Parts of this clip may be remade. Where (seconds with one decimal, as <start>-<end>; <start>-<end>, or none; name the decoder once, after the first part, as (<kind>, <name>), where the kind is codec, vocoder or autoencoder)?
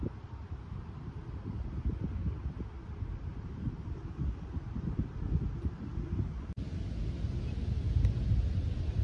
none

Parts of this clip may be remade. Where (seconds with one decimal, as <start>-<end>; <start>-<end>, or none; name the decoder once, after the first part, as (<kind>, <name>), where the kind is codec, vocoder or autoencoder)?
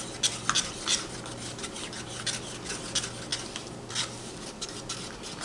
none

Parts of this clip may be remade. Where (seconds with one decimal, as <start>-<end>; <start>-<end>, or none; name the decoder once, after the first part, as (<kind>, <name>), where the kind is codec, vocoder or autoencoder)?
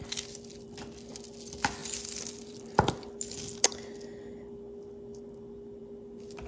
0.5-1.1 (vocoder, BigVGAN v2); 1.8-2.9